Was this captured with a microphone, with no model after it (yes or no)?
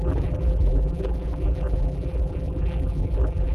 no